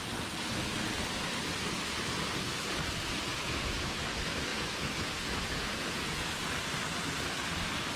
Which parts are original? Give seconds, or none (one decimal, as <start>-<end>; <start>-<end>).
0.0-3.3; 3.9-4.5; 6.3-8.0